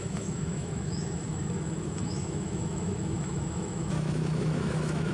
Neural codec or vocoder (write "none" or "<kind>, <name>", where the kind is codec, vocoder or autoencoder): autoencoder, DAC-VAE